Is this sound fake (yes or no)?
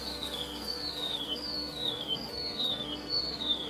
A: yes